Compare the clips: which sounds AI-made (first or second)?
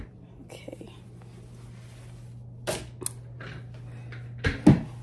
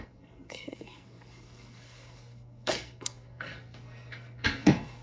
second